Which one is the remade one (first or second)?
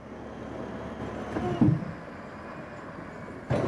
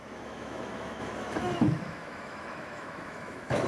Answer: second